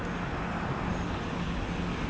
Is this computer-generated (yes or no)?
no